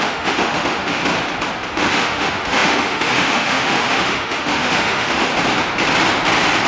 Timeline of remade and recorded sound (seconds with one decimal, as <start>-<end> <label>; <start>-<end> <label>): 0.0-1.0 remade; 1.0-1.7 recorded; 1.7-5.3 remade; 5.3-6.7 recorded